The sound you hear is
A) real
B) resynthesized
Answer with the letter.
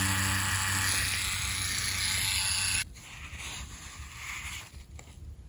A